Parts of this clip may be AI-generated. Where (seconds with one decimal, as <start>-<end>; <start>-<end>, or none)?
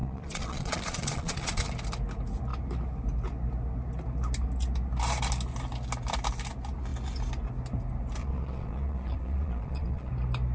0.0-1.7; 8.2-10.1